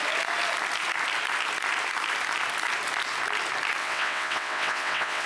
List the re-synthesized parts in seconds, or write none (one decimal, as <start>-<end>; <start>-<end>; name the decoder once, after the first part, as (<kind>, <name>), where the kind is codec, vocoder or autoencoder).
3.8-5.3 (vocoder, WaveNeXt)